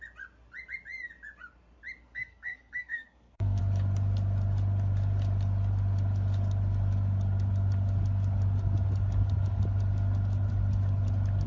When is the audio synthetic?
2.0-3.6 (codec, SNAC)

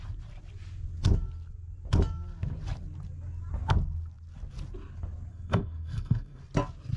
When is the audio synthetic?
5.3-6.4 (codec, SNAC)